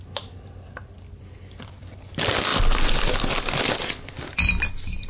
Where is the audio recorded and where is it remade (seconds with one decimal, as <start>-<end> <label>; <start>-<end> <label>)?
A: 0.0-5.1 recorded